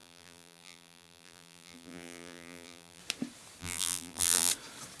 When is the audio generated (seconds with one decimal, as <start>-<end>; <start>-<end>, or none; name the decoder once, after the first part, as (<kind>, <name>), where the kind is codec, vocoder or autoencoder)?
0.0-3.0 (vocoder, BigVGAN v2); 3.6-4.5